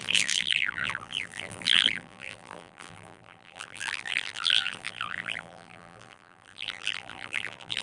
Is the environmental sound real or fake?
fake